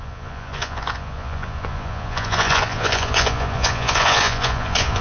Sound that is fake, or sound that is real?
fake